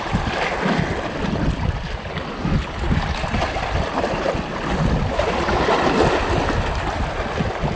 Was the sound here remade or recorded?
recorded